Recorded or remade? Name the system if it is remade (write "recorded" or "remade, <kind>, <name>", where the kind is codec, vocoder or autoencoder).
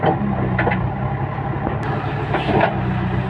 recorded